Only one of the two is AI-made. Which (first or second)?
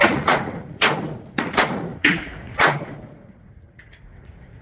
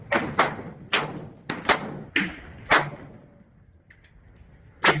first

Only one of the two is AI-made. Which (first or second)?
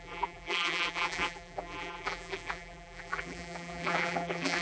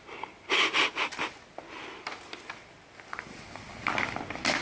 first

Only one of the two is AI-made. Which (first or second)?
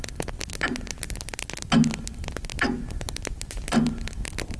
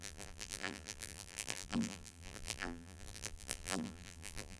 second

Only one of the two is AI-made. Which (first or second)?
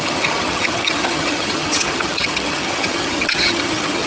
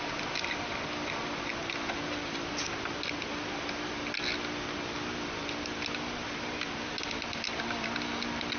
first